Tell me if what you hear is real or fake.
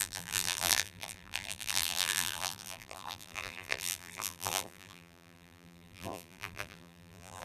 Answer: fake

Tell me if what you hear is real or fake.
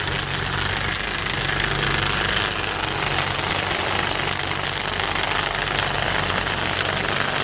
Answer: real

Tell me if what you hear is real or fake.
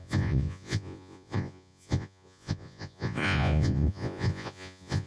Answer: fake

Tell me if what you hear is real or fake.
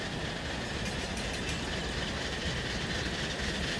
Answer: real